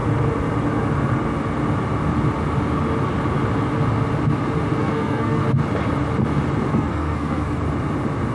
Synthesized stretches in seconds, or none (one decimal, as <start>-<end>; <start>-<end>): 4.8-5.4; 6.7-7.6